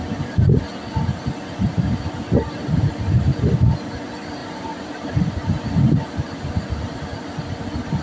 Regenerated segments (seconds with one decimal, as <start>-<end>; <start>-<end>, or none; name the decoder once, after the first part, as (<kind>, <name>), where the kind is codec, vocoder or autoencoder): 4.4-5.2 (vocoder, BigVGAN v2)